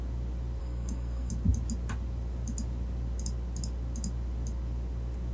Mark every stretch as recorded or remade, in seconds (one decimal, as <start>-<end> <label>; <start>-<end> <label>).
0.0-0.6 recorded; 0.6-1.3 remade; 1.3-5.3 recorded